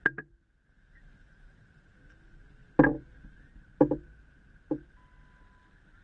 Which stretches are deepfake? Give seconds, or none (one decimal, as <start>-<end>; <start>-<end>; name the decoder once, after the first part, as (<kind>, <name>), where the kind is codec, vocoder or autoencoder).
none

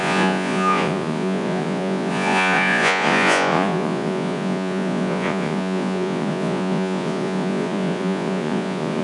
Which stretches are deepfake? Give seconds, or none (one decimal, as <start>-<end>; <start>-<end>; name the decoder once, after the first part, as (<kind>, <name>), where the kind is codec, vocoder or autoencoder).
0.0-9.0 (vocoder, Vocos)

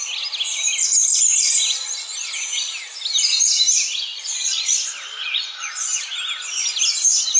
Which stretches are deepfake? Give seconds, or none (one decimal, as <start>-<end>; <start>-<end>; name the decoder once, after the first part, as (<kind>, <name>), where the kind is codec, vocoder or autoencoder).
4.1-6.0 (vocoder, Vocos)

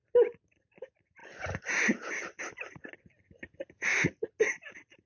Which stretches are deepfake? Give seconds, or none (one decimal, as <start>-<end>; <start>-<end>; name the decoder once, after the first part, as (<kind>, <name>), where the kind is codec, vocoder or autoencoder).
none